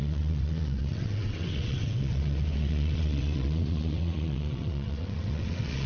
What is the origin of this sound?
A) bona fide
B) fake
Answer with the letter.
B